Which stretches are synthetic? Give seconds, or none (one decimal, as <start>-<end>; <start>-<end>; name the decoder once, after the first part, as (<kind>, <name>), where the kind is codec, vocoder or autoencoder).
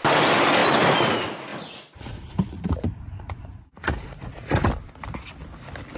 1.5-4.7 (vocoder, Vocos)